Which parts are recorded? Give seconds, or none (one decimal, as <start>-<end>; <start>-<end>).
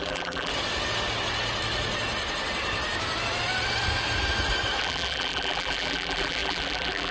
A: 0.5-4.8